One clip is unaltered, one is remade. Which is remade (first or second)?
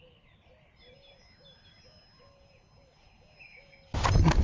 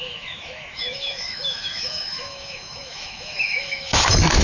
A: second